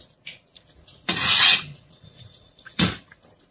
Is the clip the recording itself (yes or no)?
no